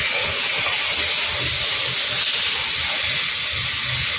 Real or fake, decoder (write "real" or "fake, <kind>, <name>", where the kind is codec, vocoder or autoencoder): real